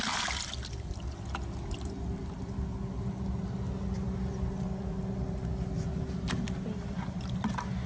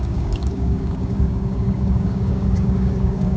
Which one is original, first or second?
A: first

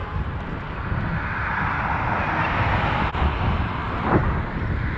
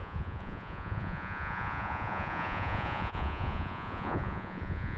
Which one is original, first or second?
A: first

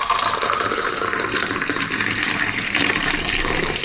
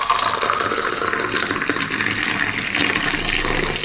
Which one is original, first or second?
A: second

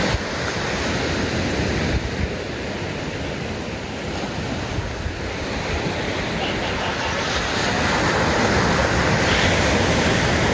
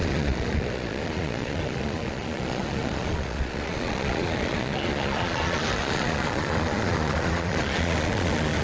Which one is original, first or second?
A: first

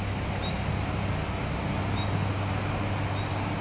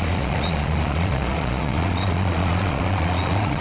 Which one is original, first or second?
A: first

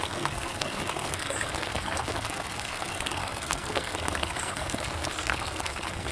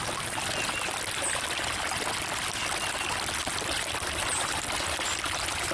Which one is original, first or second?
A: second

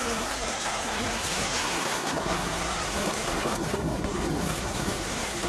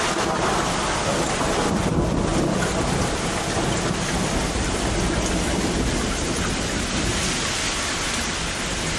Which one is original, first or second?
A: second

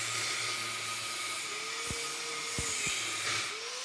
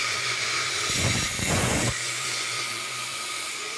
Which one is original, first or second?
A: first